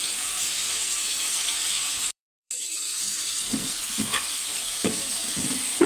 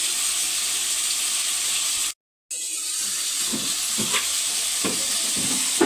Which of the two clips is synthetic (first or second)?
first